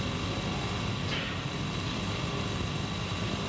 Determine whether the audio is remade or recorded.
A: recorded